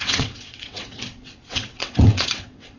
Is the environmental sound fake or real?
fake